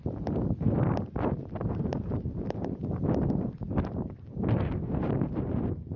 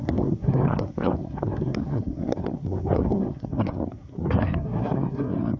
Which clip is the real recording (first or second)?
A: first